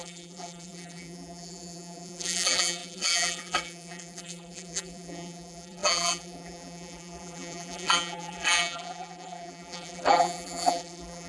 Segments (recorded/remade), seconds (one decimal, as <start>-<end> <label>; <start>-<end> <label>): 0.0-11.3 remade